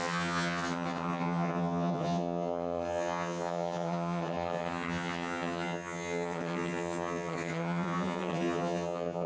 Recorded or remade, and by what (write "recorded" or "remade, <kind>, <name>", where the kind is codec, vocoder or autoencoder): remade, vocoder, HiFi-GAN